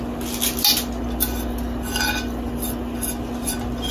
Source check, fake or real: real